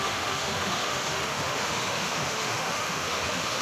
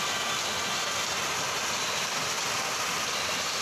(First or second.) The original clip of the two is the second